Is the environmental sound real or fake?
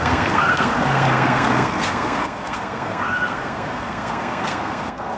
fake